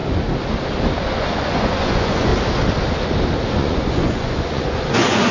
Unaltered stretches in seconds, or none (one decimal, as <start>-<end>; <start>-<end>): 0.0-1.0; 2.3-3.5